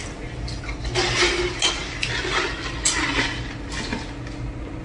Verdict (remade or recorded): recorded